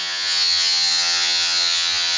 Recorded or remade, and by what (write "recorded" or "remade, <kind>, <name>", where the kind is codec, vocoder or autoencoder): remade, vocoder, HiFi-GAN